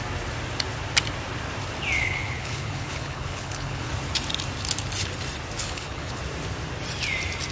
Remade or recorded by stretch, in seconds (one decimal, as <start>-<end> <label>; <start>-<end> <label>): 0.0-2.0 recorded; 2.0-3.9 remade; 3.9-5.6 recorded; 5.6-6.2 remade; 6.2-7.5 recorded